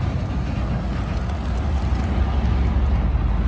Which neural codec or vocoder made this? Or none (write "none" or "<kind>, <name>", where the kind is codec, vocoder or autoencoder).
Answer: none